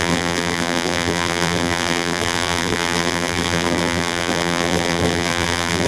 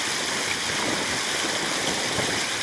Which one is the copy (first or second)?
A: first